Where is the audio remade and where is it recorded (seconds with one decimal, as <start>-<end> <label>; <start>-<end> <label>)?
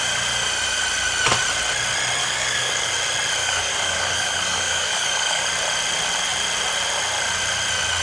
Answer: 0.0-2.2 recorded; 2.2-2.9 remade; 2.9-3.4 recorded; 3.4-5.4 remade; 5.4-8.0 recorded